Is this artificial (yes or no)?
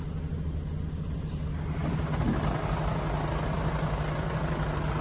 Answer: no